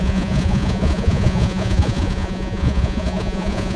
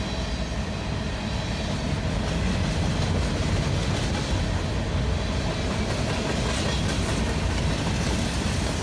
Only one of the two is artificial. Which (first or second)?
first